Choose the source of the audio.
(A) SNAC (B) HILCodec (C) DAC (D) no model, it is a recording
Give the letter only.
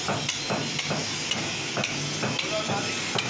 D